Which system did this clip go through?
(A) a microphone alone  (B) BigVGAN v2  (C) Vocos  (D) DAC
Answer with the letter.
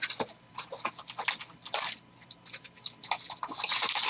A